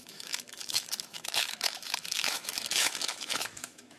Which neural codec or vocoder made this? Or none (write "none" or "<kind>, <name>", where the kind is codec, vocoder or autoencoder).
autoencoder, DAC-VAE